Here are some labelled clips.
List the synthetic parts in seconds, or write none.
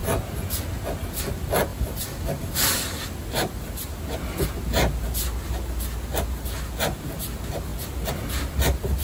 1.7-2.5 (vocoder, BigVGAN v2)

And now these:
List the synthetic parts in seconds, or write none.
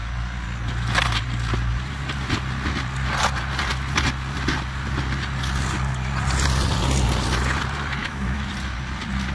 8.0-8.5 (autoencoder, DAC-VAE)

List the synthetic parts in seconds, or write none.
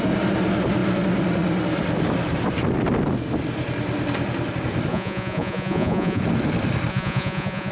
4.9-6.2 (vocoder, Vocos); 6.9-7.7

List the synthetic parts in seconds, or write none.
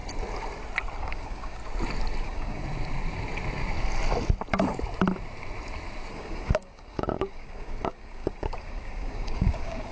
1.0-1.6 (codec, DAC); 2.2-2.6; 6.1-9.9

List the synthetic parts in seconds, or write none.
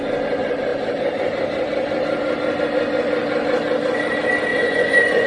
4.5-5.3 (vocoder, Vocos)